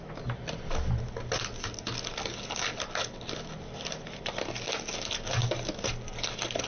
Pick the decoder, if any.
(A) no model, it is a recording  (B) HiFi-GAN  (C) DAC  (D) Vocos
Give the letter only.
A